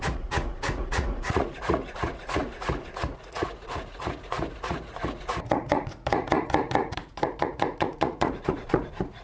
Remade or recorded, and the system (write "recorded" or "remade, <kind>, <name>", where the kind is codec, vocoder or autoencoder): remade, vocoder, Vocos